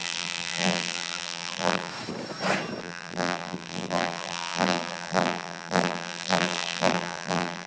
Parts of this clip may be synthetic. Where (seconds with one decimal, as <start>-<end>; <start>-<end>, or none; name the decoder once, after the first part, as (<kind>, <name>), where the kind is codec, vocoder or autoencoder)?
0.0-1.9 (vocoder, BigVGAN v2); 2.8-7.7